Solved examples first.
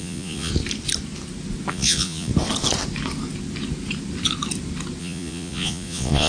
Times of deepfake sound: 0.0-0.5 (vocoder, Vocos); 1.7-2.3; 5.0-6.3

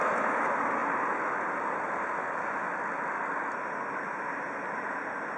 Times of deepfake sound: none

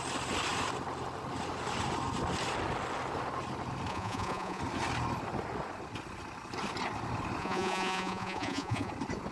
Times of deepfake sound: 3.9-4.6 (vocoder, Vocos); 7.4-8.9

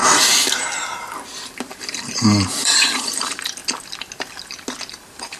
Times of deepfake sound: 1.9-3.6 (vocoder, BigVGAN v2); 4.9-5.4

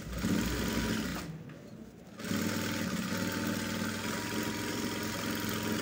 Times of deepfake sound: none

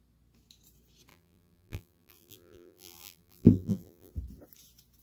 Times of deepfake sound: 1.1-4.1 (vocoder, BigVGAN v2)